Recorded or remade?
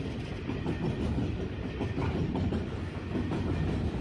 recorded